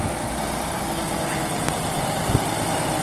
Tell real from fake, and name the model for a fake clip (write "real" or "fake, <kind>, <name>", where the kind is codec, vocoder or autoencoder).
real